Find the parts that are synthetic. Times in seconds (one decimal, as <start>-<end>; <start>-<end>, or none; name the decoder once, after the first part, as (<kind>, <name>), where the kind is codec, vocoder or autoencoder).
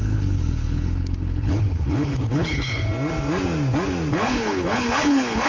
0.0-2.9 (codec, HILCodec); 4.1-5.5